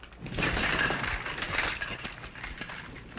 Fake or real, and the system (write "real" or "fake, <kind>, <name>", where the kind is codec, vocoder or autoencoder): real